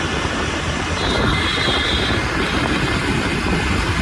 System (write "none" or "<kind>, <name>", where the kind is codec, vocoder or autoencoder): none